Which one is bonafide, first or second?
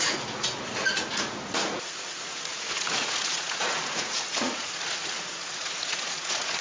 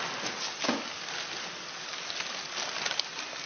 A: second